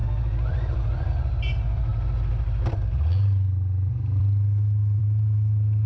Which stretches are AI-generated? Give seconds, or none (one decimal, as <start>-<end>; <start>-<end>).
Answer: 0.0-1.1